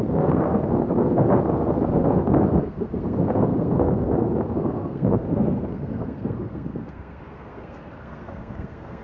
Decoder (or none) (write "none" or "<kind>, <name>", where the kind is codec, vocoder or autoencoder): codec, SNAC